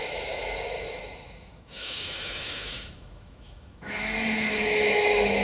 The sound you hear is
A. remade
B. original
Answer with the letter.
A